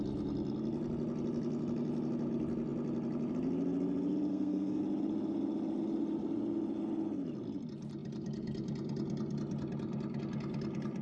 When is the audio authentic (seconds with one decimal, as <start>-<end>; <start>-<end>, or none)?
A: 0.0-4.3; 4.8-11.0